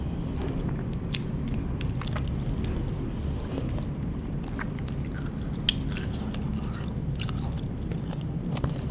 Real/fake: real